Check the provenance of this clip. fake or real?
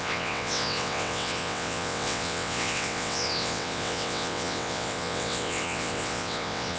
fake